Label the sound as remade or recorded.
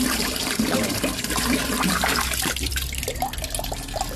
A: remade